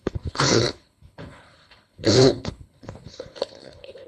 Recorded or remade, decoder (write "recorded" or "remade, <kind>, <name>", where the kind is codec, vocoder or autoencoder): remade, codec, HILCodec